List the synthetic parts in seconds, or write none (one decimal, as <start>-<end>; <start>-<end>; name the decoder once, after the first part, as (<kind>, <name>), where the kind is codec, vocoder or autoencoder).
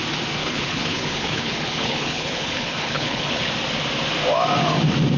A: 0.4-3.5 (codec, HILCodec)